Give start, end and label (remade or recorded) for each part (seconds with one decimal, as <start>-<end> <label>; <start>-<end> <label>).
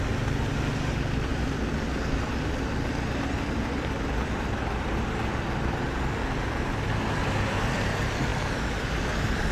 0.0-9.5 recorded